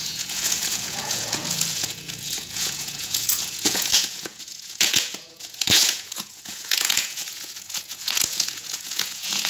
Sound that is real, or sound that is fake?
fake